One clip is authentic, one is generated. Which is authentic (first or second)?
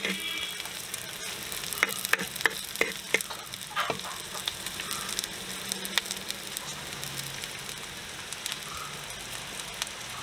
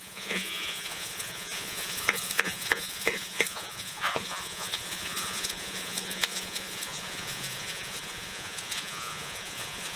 first